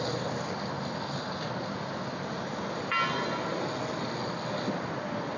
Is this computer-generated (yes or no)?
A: no